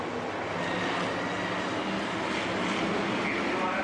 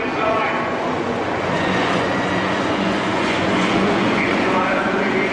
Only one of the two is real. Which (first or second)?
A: first